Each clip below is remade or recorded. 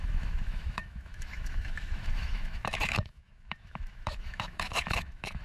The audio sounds remade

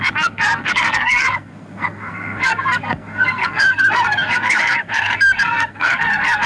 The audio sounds remade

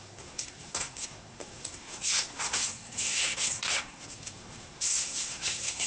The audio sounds remade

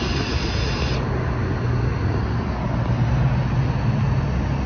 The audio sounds recorded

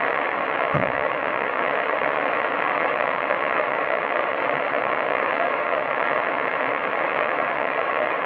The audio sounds remade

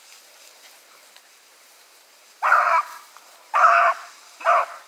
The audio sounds remade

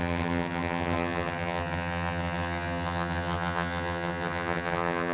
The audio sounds remade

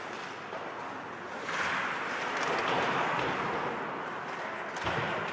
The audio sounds recorded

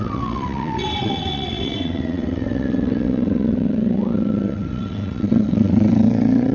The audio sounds remade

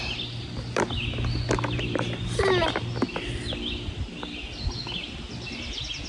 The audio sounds recorded